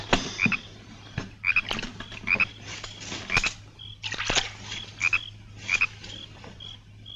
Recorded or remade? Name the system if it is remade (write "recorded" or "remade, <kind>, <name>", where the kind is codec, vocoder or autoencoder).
recorded